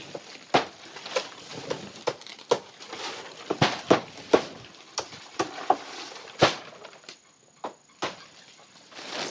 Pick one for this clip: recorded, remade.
recorded